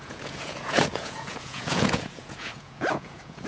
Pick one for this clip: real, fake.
fake